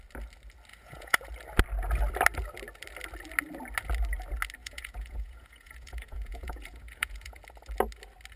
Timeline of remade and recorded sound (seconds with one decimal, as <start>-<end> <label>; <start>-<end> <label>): 0.0-0.7 recorded; 0.7-1.3 remade; 1.3-4.6 recorded; 4.6-7.4 remade; 7.4-8.4 recorded